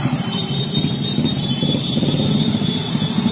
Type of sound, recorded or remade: recorded